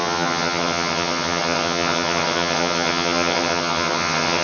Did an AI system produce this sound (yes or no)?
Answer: yes